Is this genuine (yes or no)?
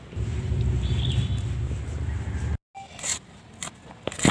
yes